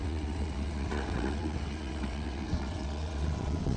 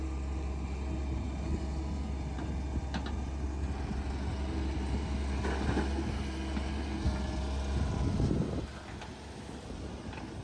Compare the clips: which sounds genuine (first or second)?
second